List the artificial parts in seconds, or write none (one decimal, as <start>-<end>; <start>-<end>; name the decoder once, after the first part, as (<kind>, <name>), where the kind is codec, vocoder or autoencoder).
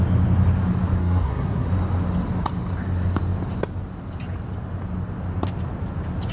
1.0-1.7 (codec, SNAC)